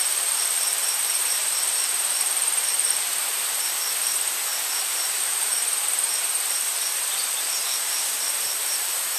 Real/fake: fake